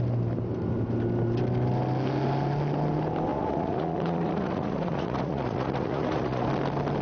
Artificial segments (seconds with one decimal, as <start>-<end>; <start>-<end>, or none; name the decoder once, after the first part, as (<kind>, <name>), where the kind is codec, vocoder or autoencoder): 3.3-6.5 (vocoder, Vocos)